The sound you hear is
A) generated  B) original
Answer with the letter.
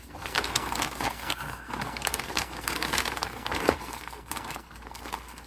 A